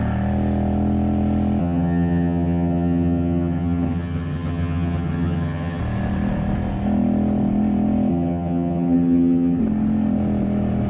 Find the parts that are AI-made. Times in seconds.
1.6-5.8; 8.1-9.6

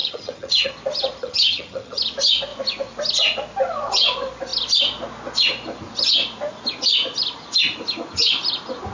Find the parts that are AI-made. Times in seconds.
0.0-0.7; 1.2-2.0

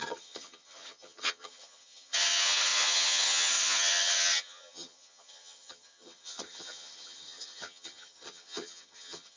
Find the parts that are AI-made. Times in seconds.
0.0-9.4

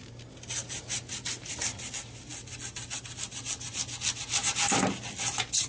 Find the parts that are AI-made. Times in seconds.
none